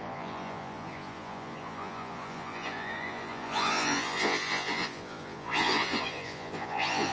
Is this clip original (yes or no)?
no